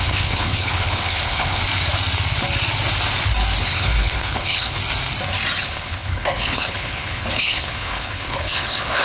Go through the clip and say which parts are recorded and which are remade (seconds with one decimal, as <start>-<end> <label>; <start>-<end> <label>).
0.0-1.6 remade; 1.6-3.6 recorded; 3.6-4.8 remade; 4.8-5.6 recorded; 5.6-9.0 remade